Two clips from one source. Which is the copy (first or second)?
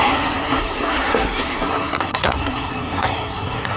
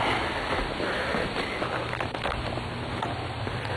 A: first